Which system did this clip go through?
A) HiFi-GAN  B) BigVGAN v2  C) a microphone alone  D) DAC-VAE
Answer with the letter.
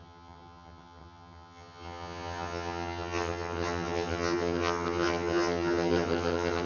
A